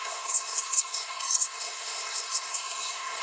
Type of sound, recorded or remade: remade